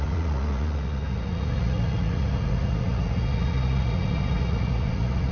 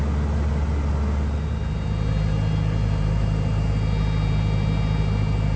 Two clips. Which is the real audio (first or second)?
second